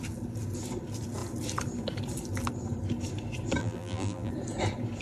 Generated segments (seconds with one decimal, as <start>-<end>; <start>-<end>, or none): 3.6-4.3